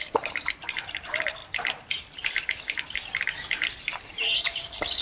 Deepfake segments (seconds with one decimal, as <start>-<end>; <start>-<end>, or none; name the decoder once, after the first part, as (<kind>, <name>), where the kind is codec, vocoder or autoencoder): 0.0-1.4 (vocoder, BigVGAN v2); 4.4-5.0